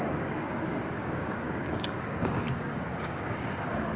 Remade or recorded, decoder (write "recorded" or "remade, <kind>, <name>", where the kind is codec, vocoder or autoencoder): remade, codec, DAC